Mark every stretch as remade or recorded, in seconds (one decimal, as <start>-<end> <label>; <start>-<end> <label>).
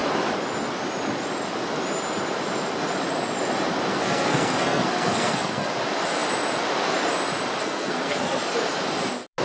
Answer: 0.0-3.9 recorded; 3.9-5.7 remade; 5.7-7.6 recorded; 7.6-8.4 remade; 8.4-9.4 recorded